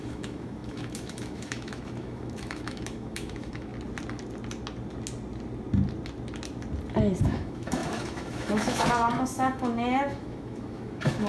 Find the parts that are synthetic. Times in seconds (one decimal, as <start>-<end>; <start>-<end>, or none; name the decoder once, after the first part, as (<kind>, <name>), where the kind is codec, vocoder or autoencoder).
0.0-3.7 (autoencoder, DAC-VAE); 7.2-11.3